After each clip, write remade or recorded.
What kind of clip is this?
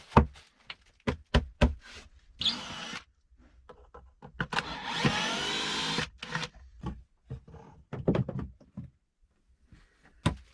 recorded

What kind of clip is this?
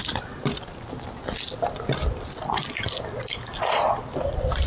recorded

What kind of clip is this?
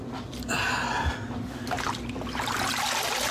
recorded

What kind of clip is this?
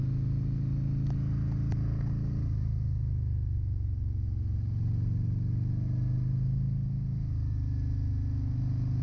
recorded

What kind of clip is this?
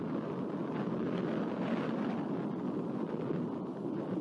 recorded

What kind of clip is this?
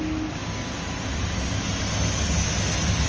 recorded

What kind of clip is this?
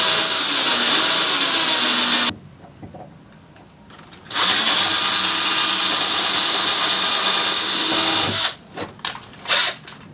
recorded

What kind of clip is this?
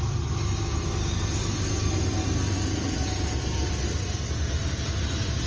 recorded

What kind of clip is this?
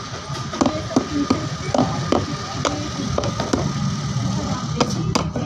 recorded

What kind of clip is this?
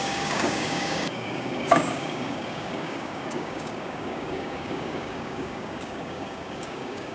remade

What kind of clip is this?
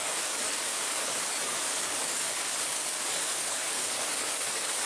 remade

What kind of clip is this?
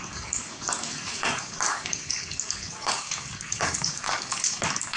remade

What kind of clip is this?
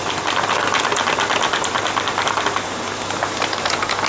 recorded